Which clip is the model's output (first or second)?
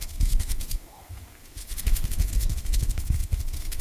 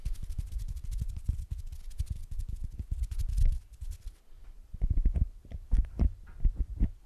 first